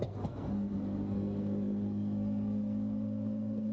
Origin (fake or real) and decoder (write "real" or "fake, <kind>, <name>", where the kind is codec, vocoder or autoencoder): fake, codec, SNAC